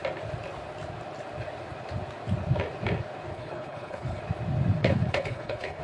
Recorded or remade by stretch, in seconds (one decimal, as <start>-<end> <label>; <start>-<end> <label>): 0.0-3.3 recorded; 3.3-4.2 remade; 4.2-4.8 recorded; 4.8-5.8 remade